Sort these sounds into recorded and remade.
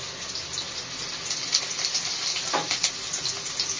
recorded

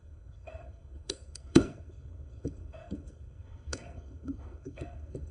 remade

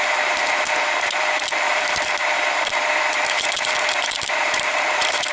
remade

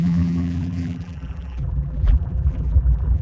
remade